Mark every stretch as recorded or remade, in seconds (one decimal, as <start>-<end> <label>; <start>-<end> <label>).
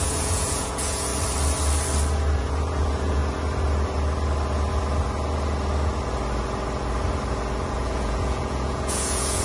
0.0-1.1 remade; 1.1-2.4 recorded; 2.4-3.2 remade; 3.2-7.7 recorded; 7.7-9.4 remade